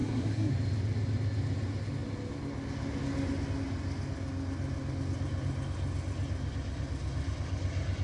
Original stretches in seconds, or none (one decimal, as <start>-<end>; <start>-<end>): 0.5-8.0